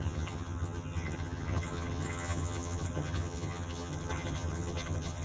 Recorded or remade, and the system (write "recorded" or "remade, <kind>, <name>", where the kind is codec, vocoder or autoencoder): remade, vocoder, HiFi-GAN